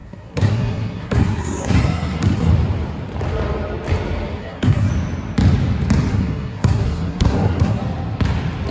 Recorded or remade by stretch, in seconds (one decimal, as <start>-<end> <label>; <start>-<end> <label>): 0.0-2.5 remade; 2.5-4.4 recorded; 4.4-4.9 remade; 4.9-6.1 recorded; 6.1-7.8 remade; 7.8-8.7 recorded